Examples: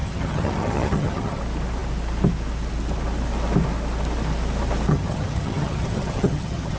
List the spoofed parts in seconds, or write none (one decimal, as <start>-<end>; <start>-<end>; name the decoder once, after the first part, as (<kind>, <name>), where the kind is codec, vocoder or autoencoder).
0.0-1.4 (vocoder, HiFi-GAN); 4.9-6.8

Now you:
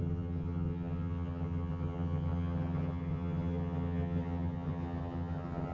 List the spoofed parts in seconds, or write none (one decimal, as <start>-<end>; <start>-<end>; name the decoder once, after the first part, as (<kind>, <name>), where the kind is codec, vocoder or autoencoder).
0.0-5.7 (vocoder, HiFi-GAN)

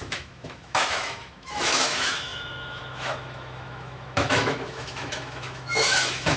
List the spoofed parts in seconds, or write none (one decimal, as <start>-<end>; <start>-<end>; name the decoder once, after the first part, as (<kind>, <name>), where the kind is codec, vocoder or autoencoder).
0.0-6.4 (autoencoder, DAC-VAE)